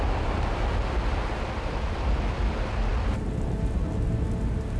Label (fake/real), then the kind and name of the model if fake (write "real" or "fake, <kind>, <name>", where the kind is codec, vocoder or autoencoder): real